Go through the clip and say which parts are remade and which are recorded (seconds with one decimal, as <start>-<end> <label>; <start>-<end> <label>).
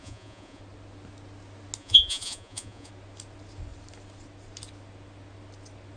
0.0-0.6 remade; 0.6-1.8 recorded; 1.8-2.9 remade; 2.9-6.0 recorded